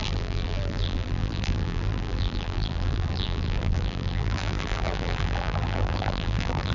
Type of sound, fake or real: fake